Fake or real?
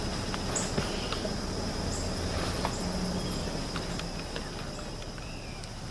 real